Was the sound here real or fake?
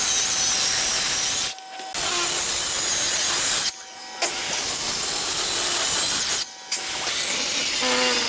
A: real